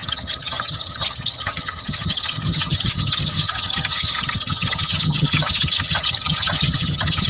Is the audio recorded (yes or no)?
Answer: no